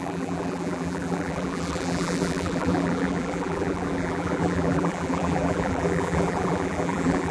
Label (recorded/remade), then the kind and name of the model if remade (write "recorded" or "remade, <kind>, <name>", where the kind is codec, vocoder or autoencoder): remade, vocoder, BigVGAN v2